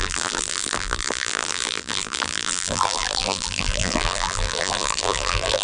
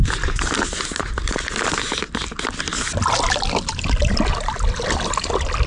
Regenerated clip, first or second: first